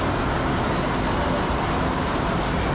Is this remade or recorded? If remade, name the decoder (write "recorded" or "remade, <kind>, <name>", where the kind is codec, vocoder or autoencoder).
recorded